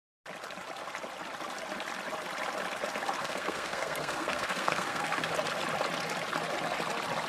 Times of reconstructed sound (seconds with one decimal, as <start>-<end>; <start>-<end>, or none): 3.2-5.3